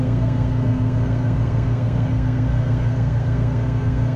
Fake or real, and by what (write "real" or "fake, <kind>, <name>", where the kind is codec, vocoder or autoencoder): fake, codec, SNAC